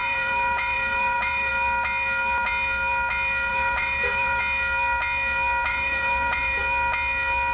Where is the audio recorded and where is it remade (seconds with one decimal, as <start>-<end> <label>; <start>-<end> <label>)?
0.0-1.5 remade; 1.5-3.5 recorded; 3.5-4.4 remade; 4.4-5.7 recorded; 5.7-6.6 remade; 6.6-7.5 recorded